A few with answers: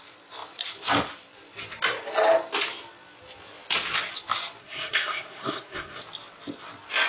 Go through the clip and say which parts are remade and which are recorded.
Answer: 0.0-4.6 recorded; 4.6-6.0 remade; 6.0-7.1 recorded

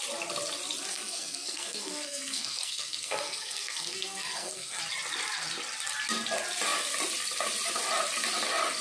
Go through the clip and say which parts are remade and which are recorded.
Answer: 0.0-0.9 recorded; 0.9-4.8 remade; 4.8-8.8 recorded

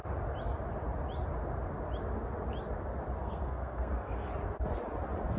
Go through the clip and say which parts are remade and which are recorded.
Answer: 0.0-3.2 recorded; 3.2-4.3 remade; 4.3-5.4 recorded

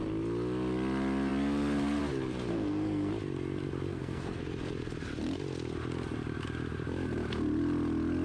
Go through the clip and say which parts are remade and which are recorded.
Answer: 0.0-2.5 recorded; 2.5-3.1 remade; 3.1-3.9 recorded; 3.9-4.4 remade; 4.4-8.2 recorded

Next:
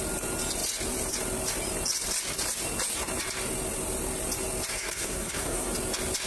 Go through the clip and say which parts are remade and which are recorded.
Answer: 0.0-4.7 recorded; 4.7-5.7 remade; 5.7-6.3 recorded

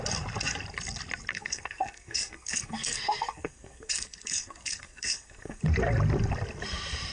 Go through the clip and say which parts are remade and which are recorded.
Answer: 0.0-1.3 recorded; 1.3-5.6 remade; 5.6-7.1 recorded